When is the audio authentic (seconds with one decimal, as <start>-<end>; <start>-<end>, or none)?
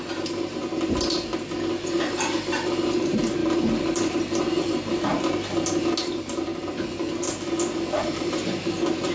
1.3-1.8; 5.1-6.1; 6.5-8.0